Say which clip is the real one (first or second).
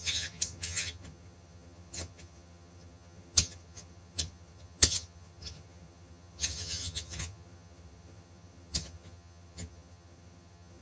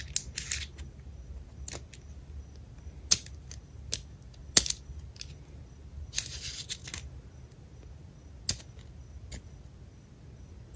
second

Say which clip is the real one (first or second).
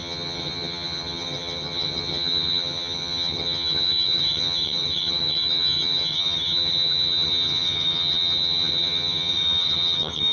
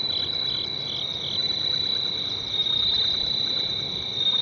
second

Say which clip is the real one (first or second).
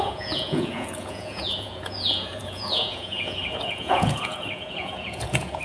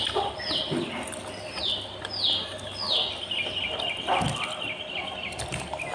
second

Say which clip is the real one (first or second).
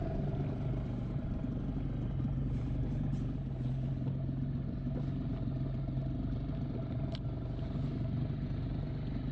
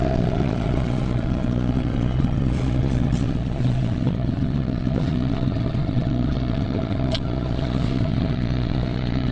first